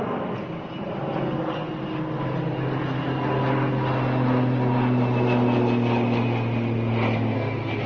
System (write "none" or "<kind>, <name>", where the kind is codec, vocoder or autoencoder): none